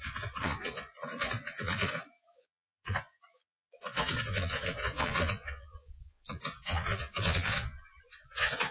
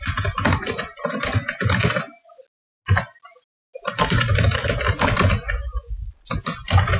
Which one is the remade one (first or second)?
first